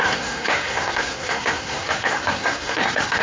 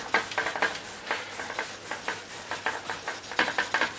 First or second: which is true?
second